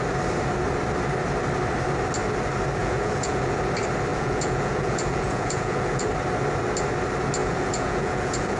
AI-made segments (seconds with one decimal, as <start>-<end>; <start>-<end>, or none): 2.8-3.6; 4.1-6.1; 7.4-8.6